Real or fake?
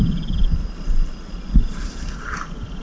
real